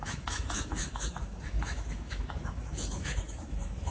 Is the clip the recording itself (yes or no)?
no